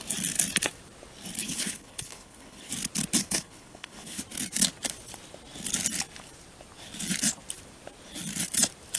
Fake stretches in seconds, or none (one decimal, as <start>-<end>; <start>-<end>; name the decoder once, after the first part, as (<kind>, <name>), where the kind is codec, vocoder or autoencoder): 1.4-2.7 (codec, HILCodec); 3.2-4.2